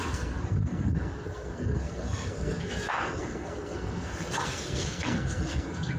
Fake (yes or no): yes